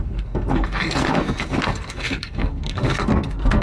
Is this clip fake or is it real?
fake